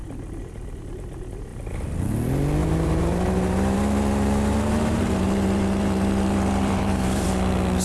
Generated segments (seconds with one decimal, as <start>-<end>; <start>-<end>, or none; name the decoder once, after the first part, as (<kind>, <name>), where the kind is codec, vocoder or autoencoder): 2.6-7.3 (vocoder, BigVGAN v2)